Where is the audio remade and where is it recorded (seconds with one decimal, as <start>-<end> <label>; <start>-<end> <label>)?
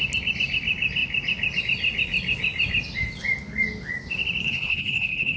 0.0-4.4 recorded; 4.4-5.4 remade